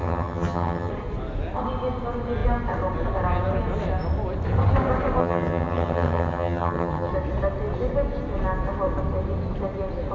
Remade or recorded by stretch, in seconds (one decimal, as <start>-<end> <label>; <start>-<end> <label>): 0.0-0.9 remade; 0.9-5.2 recorded; 5.2-7.1 remade; 7.1-10.1 recorded